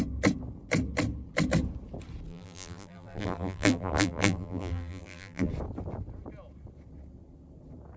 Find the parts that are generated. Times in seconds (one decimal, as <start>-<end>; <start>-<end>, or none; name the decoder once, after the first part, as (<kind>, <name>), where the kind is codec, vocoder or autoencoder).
2.3-5.5 (vocoder, BigVGAN v2)